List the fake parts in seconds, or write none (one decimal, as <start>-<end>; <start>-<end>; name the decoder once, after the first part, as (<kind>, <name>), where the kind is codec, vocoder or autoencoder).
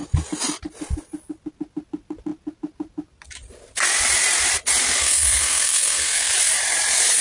5.0-6.3 (codec, SNAC)